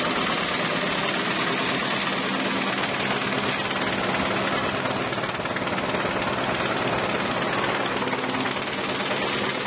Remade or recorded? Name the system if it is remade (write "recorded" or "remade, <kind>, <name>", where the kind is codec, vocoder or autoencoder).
recorded